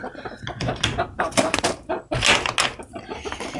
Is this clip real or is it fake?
real